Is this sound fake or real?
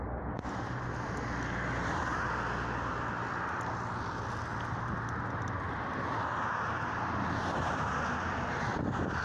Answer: real